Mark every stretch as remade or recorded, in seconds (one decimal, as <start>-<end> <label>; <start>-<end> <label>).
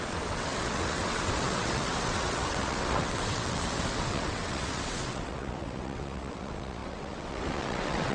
0.0-8.1 remade